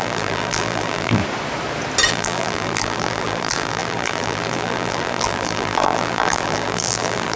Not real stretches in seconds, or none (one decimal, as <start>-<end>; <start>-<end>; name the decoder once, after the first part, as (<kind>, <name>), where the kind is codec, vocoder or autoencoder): 0.0-1.2 (vocoder, BigVGAN v2); 2.1-7.4

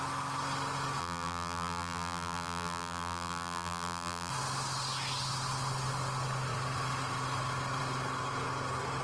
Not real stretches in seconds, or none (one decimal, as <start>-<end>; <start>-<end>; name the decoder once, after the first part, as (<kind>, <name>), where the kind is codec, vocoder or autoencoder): 1.0-4.3 (vocoder, BigVGAN v2)

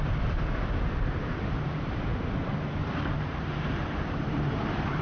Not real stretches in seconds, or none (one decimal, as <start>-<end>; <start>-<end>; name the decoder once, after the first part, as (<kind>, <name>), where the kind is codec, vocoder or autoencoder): 0.0-2.1 (vocoder, BigVGAN v2); 2.8-5.0

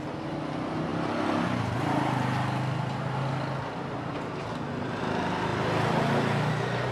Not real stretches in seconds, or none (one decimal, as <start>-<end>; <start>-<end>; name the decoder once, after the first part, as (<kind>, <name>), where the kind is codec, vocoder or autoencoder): 5.5-6.5 (vocoder, BigVGAN v2)

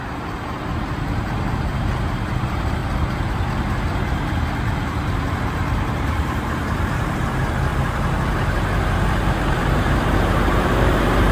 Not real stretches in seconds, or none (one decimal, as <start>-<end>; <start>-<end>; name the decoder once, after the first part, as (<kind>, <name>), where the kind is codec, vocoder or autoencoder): 0.0-2.8 (vocoder, BigVGAN v2); 3.8-7.7; 8.3-11.3

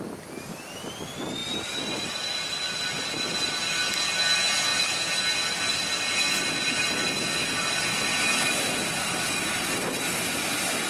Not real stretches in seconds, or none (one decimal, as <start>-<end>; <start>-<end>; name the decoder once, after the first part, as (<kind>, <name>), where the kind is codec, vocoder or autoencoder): 1.4-3.5 (vocoder, BigVGAN v2)

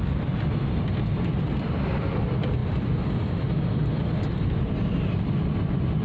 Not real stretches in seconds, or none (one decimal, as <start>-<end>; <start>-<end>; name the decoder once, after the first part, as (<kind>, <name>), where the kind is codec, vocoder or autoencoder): 0.0-0.9 (vocoder, BigVGAN v2); 2.1-6.0

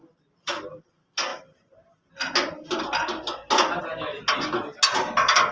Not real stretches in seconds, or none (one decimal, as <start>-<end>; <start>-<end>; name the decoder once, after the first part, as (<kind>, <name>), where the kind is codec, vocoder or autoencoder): none